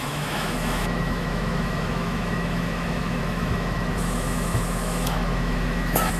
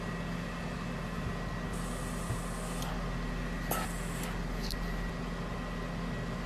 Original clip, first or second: second